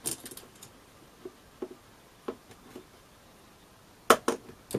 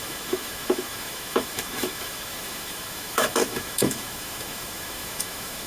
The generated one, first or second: second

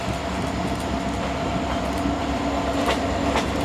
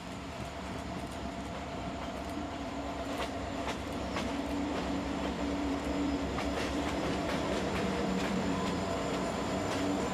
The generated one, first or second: second